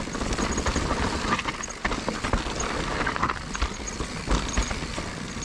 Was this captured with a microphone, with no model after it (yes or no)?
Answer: yes